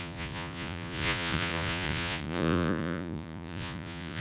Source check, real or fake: fake